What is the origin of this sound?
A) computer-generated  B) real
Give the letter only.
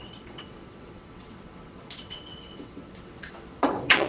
A